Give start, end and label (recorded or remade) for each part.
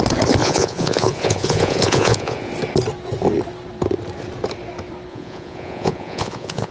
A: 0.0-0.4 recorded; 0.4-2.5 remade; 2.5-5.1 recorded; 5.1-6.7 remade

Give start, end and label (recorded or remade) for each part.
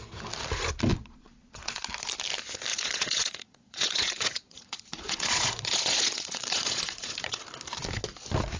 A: 0.0-0.9 recorded; 0.9-1.8 remade; 1.8-2.7 recorded; 2.7-7.4 remade; 7.4-8.6 recorded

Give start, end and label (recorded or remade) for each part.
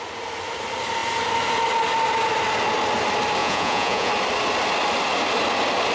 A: 0.0-3.4 recorded; 3.4-4.1 remade; 4.1-5.9 recorded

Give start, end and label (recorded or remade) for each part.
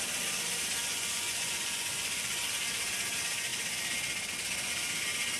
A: 0.0-0.9 recorded; 0.9-2.5 remade; 2.5-5.4 recorded